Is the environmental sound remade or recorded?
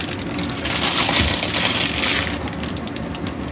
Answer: recorded